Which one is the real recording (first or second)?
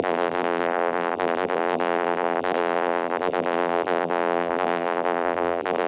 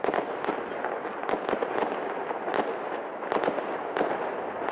second